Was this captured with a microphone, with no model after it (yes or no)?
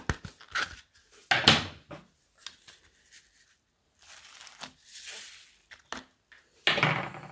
yes